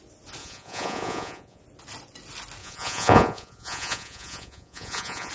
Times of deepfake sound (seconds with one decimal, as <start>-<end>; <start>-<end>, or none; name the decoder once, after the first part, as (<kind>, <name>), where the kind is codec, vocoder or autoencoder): 0.4-1.6 (vocoder, Vocos); 2.6-5.3